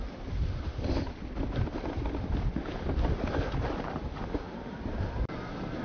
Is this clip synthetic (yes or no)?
no